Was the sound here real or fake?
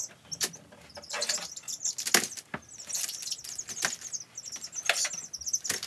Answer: real